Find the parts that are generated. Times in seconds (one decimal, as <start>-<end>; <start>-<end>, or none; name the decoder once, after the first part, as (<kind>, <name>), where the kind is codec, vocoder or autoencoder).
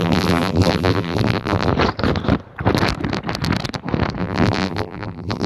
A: 0.0-1.7 (vocoder, BigVGAN v2); 4.2-5.5